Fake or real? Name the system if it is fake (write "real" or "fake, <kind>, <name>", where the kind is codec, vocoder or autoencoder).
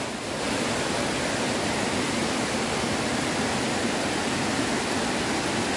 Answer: real